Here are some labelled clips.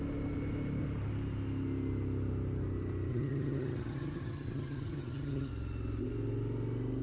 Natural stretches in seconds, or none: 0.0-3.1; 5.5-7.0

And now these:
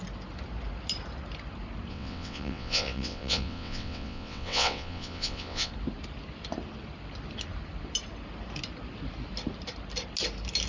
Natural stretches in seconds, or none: 0.0-1.9; 5.7-10.7

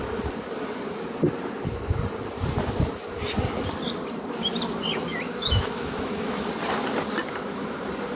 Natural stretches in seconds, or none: 0.0-5.1; 6.5-8.2